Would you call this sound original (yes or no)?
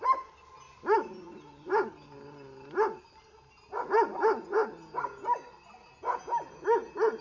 yes